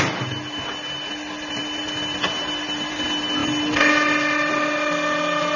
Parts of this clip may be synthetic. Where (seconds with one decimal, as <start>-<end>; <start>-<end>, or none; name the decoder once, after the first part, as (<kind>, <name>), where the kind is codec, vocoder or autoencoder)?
none